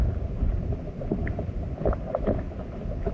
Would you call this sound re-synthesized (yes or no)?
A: no